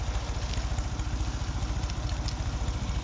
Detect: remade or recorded recorded